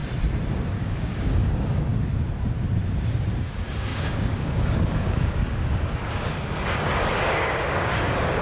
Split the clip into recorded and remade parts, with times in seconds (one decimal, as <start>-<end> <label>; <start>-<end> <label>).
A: 0.0-0.7 recorded; 0.7-1.9 remade; 1.9-3.4 recorded; 3.4-8.4 remade